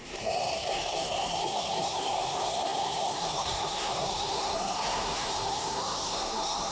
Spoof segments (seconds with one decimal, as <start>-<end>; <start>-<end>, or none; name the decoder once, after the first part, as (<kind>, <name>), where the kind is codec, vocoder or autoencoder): 0.0-6.7 (codec, SNAC)